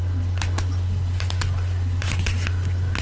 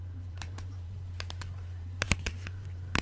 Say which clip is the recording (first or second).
first